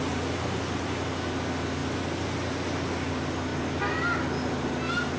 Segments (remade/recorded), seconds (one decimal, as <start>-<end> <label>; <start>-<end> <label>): 0.0-5.2 recorded